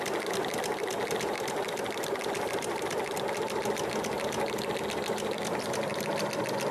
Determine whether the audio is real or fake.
real